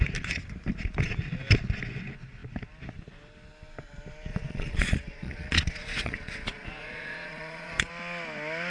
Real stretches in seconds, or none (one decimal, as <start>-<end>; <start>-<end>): 0.0-4.3; 7.9-8.7